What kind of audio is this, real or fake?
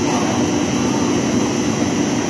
real